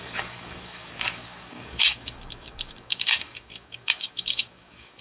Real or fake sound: fake